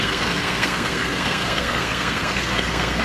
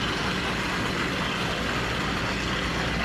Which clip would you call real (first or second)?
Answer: second